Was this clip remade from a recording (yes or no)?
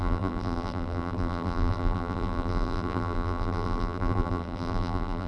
yes